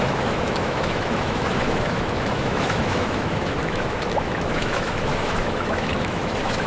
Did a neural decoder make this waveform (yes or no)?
yes